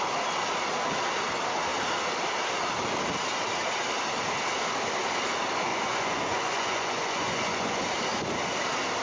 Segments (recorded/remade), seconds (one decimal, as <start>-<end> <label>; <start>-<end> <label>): 0.0-5.7 recorded; 5.7-7.8 remade; 7.8-9.0 recorded

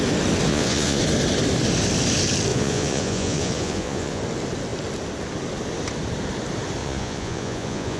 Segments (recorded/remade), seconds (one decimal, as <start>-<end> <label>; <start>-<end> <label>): 0.0-0.5 recorded; 0.5-1.0 remade; 1.0-2.5 recorded; 2.5-4.2 remade; 4.2-6.8 recorded; 6.8-8.0 remade

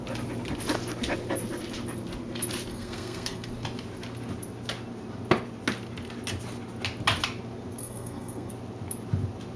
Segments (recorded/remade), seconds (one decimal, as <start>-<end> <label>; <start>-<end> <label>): 0.0-2.7 recorded; 2.7-3.5 remade; 3.5-7.8 recorded; 7.8-8.5 remade; 8.5-9.6 recorded

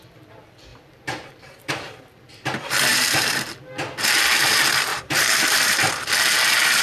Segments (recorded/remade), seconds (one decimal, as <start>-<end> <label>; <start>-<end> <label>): 0.0-0.7 recorded; 0.7-1.9 remade; 1.9-2.9 recorded; 2.9-3.6 remade; 3.6-4.9 recorded; 4.9-5.9 remade; 5.9-6.8 recorded